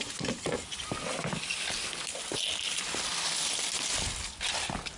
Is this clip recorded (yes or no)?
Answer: yes